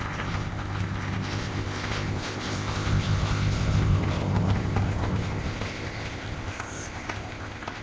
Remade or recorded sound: remade